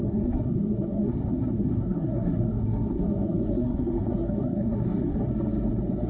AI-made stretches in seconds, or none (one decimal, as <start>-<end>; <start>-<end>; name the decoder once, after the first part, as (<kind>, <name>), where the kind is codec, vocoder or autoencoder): 0.0-5.3 (codec, SNAC)